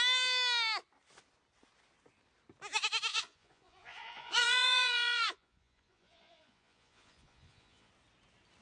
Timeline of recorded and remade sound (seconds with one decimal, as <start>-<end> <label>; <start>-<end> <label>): 0.0-3.1 recorded; 3.1-7.9 remade; 7.9-8.6 recorded